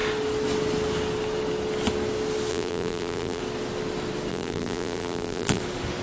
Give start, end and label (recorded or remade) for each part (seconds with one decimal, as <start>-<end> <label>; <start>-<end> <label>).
0.0-2.5 recorded; 2.5-3.4 remade; 3.4-4.3 recorded; 4.3-5.6 remade; 5.6-6.0 recorded